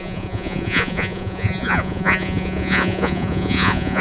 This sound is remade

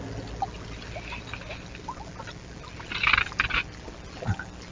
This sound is recorded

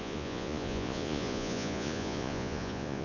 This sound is remade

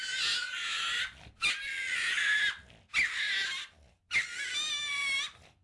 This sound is recorded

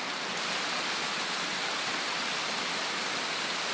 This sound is recorded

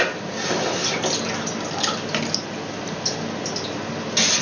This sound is recorded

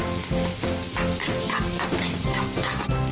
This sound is recorded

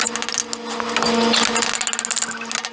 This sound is recorded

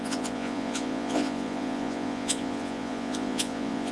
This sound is remade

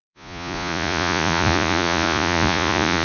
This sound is remade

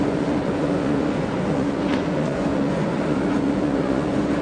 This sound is remade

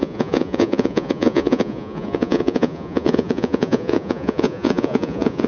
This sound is remade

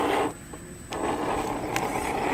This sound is recorded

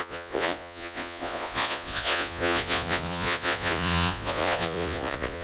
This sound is remade